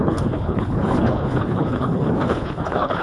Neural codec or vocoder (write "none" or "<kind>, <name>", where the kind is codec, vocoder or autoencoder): codec, HILCodec